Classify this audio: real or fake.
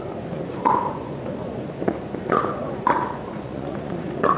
fake